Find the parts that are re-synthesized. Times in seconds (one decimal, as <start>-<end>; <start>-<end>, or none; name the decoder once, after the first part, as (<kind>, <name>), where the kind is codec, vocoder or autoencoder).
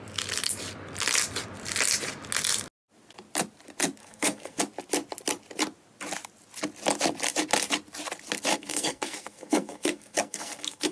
4.0-4.6 (codec, SNAC); 8.5-10.9